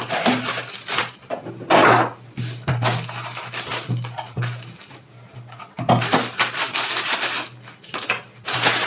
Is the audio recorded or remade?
recorded